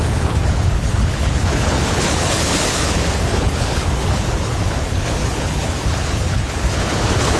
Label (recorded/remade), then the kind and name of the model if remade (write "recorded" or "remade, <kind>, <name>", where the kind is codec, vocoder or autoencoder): remade, codec, HILCodec